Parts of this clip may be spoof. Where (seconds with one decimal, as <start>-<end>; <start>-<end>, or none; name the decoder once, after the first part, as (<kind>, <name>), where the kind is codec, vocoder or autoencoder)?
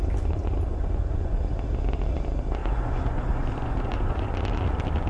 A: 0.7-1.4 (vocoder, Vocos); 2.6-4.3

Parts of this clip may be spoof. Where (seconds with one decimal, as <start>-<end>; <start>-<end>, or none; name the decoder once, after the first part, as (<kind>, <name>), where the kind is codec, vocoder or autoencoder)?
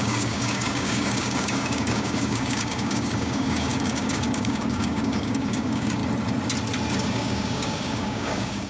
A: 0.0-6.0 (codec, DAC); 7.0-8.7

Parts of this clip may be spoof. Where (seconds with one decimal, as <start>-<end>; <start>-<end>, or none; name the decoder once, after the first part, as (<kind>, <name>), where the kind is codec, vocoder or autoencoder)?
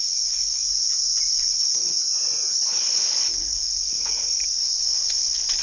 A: 0.0-0.6 (codec, HILCodec); 1.3-2.0; 2.5-5.6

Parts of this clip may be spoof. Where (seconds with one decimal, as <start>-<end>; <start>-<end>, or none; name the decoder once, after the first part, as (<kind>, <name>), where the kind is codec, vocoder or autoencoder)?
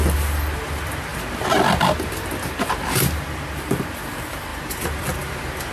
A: 4.5-5.7 (vocoder, BigVGAN v2)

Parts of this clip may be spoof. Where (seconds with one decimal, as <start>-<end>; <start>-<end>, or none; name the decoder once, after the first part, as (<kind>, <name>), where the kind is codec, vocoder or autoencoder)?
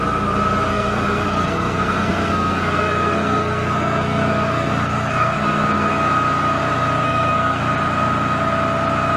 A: 0.7-5.9 (codec, SNAC); 7.0-7.6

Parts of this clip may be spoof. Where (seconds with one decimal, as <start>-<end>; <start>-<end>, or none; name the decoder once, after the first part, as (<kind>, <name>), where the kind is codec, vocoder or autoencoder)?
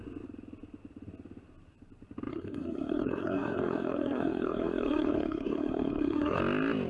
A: 2.3-6.4 (codec, SNAC)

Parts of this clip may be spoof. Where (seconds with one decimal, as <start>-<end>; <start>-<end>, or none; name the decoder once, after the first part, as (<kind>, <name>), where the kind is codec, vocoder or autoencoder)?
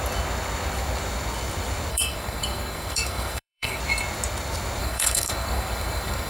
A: 1.9-3.8 (codec, SNAC); 4.8-6.3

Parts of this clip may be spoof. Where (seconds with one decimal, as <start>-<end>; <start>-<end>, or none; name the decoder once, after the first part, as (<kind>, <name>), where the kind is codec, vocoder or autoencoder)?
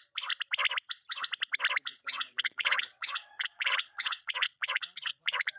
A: 1.9-5.6 (vocoder, Vocos)